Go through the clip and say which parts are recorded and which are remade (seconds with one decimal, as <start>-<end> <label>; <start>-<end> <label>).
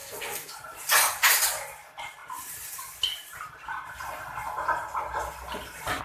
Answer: 0.0-0.5 remade; 0.5-6.0 recorded